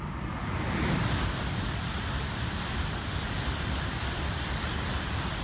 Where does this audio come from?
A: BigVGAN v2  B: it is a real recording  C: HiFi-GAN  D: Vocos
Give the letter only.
B